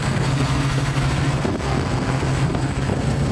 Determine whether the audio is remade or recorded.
remade